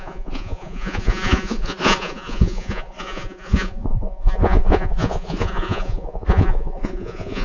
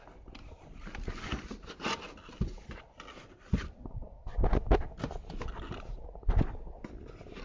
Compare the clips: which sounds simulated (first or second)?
first